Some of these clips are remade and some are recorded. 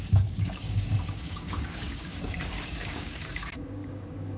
remade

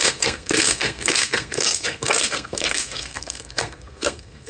remade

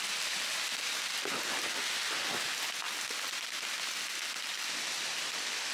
recorded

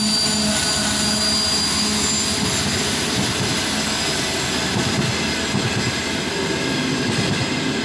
recorded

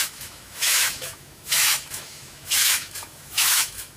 remade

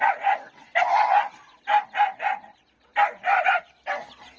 recorded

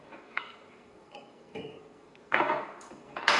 remade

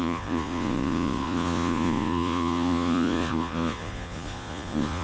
remade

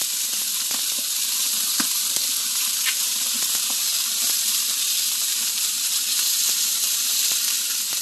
recorded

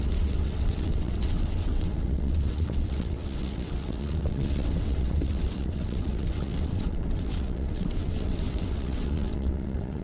remade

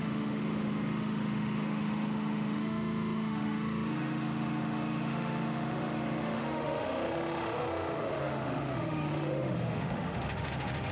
remade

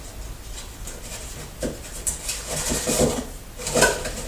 recorded